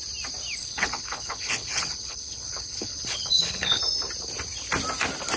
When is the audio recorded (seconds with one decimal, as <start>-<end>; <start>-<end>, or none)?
0.0-0.6; 3.8-5.4